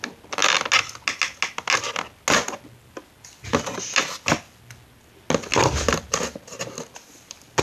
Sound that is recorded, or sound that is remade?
recorded